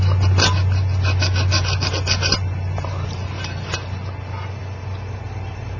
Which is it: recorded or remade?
recorded